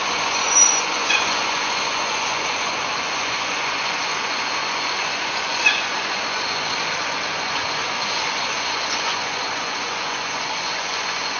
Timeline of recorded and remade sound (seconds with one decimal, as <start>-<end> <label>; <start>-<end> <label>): 0.0-11.4 remade